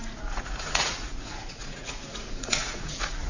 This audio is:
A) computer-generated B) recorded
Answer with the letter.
A